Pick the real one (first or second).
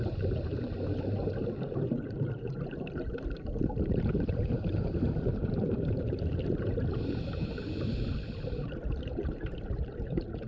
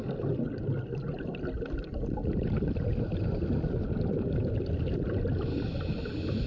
second